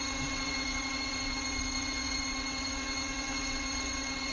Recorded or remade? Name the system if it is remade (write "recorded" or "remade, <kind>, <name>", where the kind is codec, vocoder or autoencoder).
remade, vocoder, WaveNeXt